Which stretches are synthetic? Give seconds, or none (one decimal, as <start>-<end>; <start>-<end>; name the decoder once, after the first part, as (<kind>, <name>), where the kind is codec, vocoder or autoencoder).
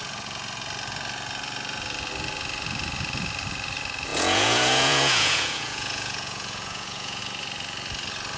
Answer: 4.1-7.2 (vocoder, Vocos)